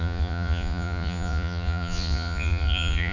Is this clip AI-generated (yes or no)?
yes